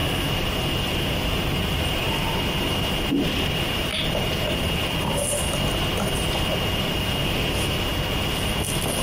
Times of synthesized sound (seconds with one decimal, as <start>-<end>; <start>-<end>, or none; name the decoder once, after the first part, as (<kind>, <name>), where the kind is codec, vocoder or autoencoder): none